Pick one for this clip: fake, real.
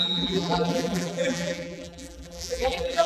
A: fake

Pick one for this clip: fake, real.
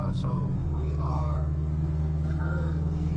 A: fake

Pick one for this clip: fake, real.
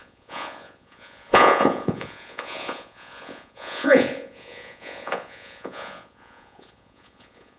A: fake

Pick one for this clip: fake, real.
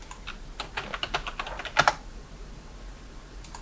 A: real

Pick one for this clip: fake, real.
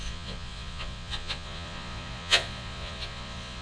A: fake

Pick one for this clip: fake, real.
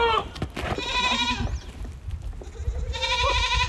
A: real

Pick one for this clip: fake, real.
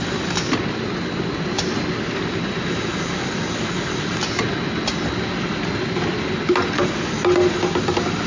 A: real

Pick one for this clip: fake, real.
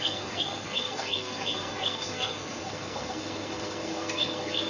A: fake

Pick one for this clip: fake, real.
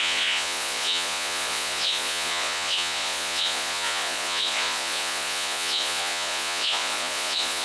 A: fake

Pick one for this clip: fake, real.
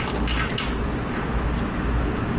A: real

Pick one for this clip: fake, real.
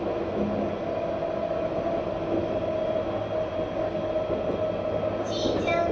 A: real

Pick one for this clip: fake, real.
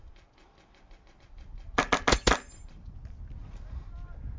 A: real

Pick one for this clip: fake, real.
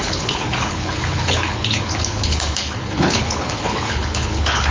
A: fake